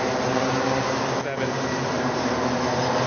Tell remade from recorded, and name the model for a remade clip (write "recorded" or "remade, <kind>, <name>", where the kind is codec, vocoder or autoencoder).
recorded